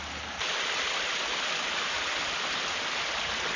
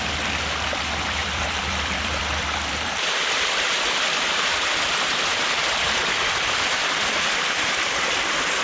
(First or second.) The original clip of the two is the first